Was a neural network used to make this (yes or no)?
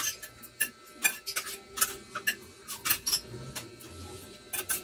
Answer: no